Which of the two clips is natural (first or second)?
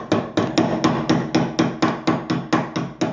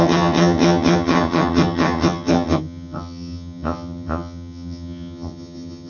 first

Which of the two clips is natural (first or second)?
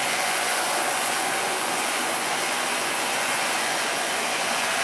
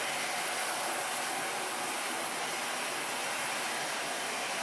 second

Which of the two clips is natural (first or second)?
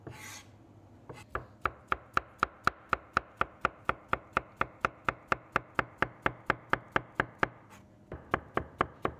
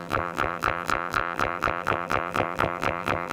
first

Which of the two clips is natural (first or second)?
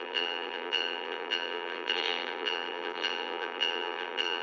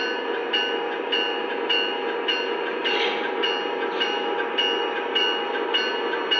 second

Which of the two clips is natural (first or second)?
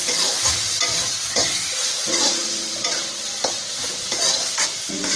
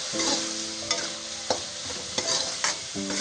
second